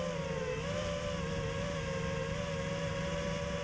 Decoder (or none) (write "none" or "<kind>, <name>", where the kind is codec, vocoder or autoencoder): none